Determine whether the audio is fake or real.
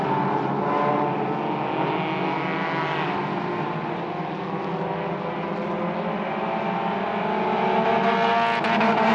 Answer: real